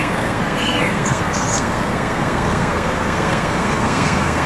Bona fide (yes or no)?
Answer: no